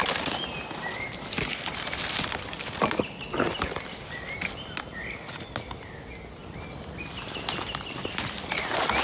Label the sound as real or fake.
real